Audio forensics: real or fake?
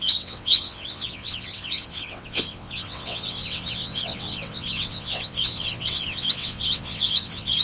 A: fake